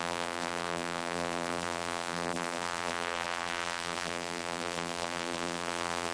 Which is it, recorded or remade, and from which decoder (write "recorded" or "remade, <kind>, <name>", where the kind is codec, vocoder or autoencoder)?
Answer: remade, vocoder, BigVGAN v2